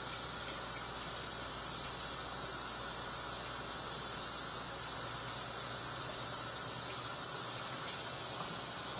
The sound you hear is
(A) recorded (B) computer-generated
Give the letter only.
A